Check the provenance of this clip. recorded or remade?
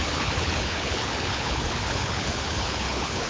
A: remade